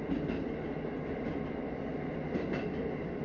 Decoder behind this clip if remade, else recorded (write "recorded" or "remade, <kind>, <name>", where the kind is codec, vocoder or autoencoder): recorded